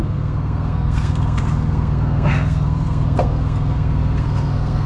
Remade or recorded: remade